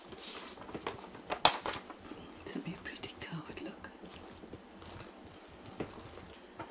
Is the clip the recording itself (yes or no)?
yes